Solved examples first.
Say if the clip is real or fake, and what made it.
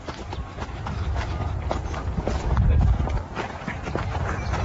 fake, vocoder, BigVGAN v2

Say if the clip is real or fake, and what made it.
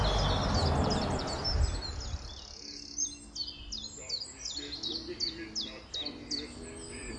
real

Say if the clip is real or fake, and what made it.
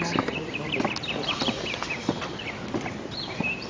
real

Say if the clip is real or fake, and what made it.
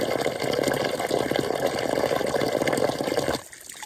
real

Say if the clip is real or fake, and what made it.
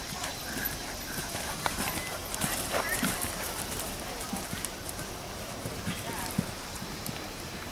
fake, vocoder, BigVGAN v2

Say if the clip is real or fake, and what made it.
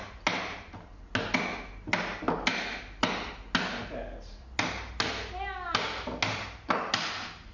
real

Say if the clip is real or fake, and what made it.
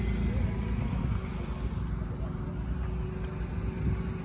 real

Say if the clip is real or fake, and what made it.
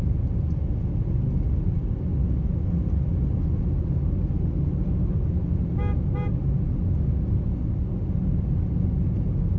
real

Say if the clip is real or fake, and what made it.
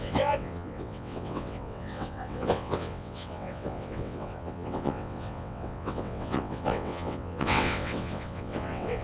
fake, vocoder, WaveNeXt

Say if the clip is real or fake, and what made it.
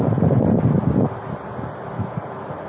real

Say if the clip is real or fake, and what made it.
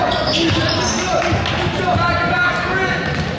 real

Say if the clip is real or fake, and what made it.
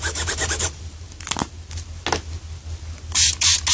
real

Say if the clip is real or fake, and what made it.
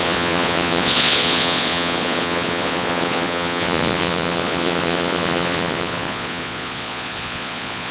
fake, vocoder, Vocos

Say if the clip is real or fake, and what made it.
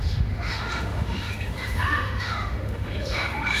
fake, autoencoder, DAC-VAE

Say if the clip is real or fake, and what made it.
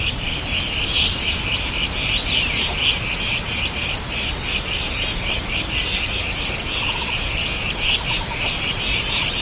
real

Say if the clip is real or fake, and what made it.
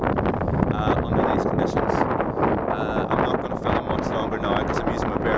real